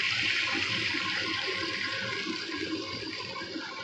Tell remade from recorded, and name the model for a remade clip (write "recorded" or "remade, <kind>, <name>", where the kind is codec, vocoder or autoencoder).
recorded